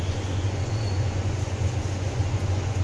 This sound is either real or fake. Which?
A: fake